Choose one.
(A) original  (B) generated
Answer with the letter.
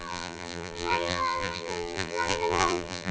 B